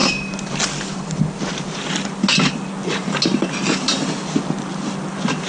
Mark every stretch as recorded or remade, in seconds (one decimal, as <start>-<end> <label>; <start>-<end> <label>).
0.0-5.5 recorded